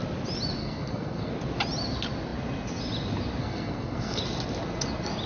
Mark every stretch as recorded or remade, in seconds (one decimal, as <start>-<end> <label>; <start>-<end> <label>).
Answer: 0.0-0.6 recorded; 0.6-1.3 remade; 1.3-3.4 recorded; 3.4-4.2 remade; 4.2-5.3 recorded